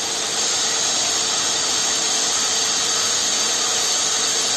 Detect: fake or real fake